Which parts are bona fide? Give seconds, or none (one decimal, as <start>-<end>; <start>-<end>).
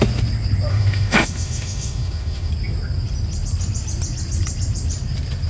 0.0-0.7; 2.5-5.5